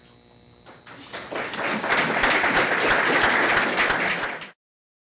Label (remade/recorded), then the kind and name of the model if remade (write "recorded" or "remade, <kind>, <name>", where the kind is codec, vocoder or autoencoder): recorded